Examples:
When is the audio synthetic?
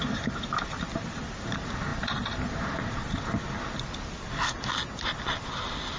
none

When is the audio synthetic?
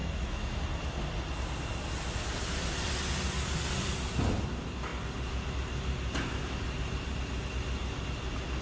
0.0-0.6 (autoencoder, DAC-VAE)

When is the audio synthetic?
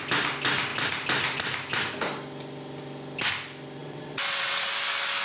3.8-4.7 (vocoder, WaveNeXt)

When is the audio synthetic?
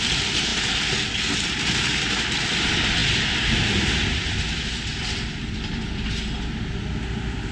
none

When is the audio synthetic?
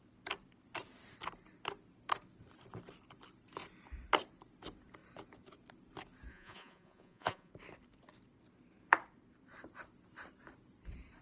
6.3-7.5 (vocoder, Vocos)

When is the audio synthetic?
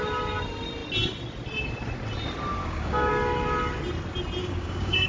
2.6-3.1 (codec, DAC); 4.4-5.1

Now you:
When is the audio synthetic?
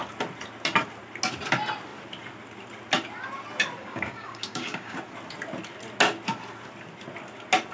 3.8-5.0 (codec, DAC)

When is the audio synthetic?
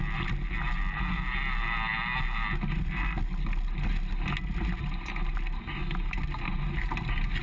none